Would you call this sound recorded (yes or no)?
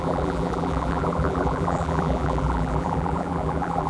no